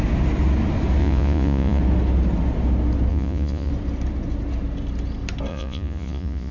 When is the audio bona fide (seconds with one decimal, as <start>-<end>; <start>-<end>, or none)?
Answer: 0.0-1.0; 1.8-3.1; 3.7-5.5